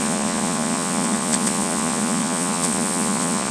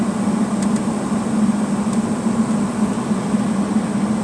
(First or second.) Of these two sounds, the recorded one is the second